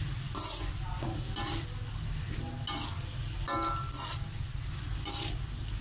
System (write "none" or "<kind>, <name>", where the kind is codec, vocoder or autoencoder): none